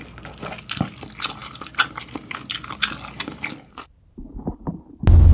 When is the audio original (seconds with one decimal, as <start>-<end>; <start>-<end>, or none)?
0.0-5.3